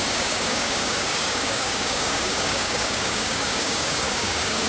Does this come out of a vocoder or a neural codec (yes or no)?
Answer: yes